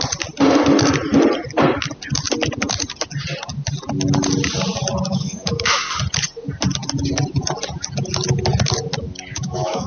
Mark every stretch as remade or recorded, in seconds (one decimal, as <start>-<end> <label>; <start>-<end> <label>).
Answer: 0.0-5.1 recorded; 5.1-5.7 remade; 5.7-9.3 recorded; 9.3-9.9 remade